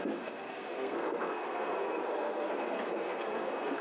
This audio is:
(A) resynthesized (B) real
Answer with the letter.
A